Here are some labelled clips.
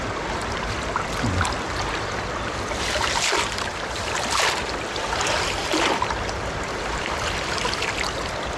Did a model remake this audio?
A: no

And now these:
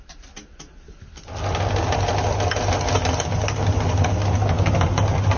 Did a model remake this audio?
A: no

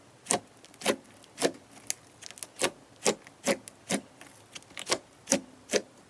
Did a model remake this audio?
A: no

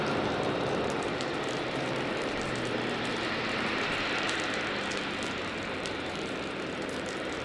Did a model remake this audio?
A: yes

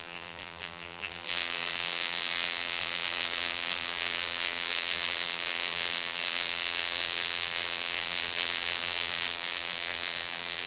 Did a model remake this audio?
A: yes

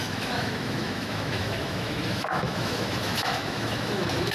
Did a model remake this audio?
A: yes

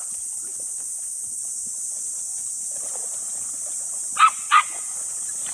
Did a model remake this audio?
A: no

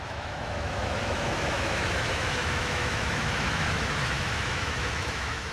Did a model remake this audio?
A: yes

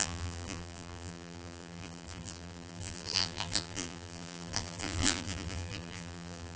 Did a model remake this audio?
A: yes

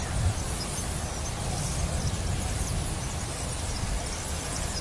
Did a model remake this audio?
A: yes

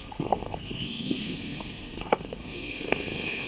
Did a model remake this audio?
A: yes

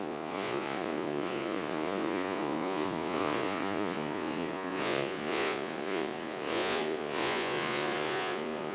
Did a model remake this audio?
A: yes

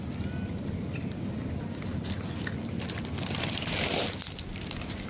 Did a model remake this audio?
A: no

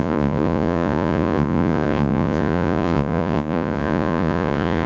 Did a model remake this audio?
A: yes